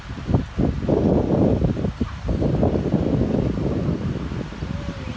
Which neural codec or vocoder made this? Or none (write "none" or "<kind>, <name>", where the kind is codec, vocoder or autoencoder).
none